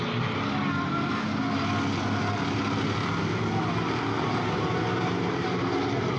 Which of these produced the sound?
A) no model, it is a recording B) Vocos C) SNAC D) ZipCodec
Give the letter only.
A